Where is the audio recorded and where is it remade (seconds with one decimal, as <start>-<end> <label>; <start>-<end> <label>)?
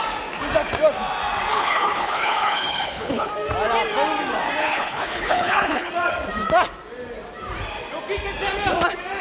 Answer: 0.0-1.5 recorded; 1.5-3.3 remade; 3.3-4.6 recorded; 4.6-5.9 remade; 5.9-9.2 recorded